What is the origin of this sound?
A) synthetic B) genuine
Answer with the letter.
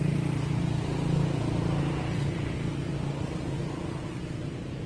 B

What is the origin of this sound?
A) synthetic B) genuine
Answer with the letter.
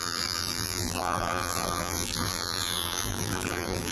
A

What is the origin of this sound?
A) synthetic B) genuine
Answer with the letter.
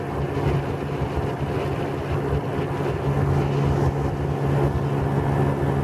B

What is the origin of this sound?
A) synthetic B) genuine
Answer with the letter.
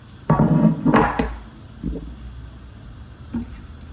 B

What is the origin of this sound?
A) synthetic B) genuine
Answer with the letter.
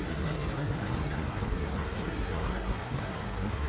A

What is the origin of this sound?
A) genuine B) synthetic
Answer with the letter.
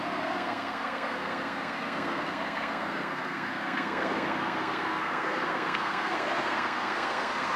B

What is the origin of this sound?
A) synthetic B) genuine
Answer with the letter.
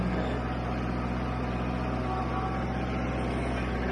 B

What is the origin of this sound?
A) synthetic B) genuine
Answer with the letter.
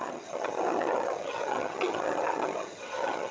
A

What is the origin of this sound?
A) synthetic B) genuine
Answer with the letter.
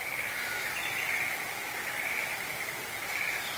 B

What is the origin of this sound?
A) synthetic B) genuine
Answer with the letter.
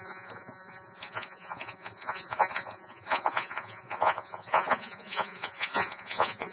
A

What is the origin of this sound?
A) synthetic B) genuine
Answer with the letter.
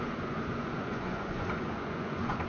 A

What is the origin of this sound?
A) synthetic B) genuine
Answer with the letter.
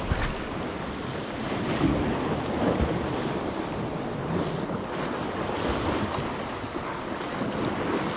B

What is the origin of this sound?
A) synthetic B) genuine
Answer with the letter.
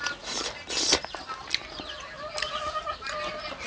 B